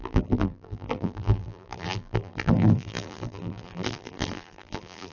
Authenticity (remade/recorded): remade